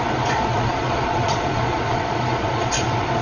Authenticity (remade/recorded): remade